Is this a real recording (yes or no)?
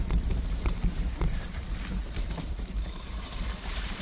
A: no